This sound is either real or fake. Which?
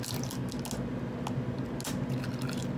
real